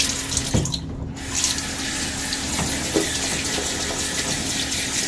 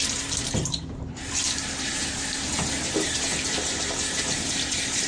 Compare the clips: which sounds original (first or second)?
first